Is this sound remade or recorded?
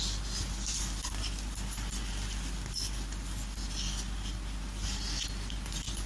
recorded